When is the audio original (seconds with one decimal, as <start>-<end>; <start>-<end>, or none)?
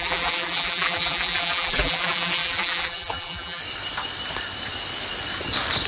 3.6-5.9